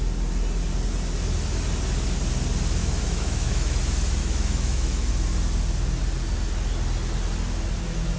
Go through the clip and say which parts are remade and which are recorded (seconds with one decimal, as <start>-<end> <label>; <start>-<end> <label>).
0.0-2.8 recorded; 2.8-3.8 remade; 3.8-4.2 recorded; 4.2-5.1 remade; 5.1-8.2 recorded